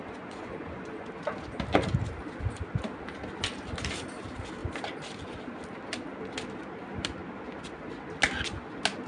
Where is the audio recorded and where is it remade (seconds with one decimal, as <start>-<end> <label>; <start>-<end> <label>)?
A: 0.0-1.1 remade; 1.1-9.1 recorded